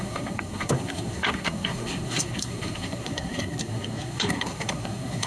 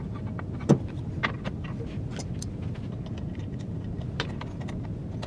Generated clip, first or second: first